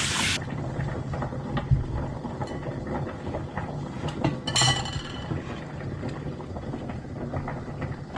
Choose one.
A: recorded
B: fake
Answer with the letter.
A